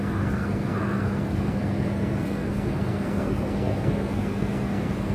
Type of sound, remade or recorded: remade